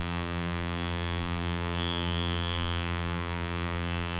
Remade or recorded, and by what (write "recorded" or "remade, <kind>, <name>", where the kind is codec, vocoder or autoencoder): remade, vocoder, BigVGAN v2